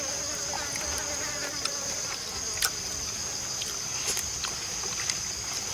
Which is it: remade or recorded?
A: recorded